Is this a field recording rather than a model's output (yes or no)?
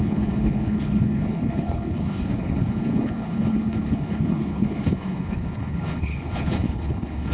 no